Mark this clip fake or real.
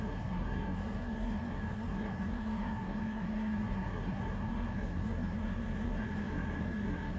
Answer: fake